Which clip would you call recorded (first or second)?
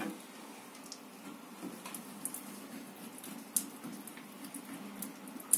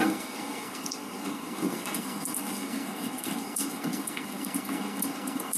first